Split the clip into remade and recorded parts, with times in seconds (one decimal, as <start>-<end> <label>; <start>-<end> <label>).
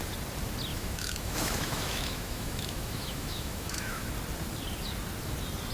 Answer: 0.0-0.7 recorded; 0.7-4.1 remade; 4.1-5.7 recorded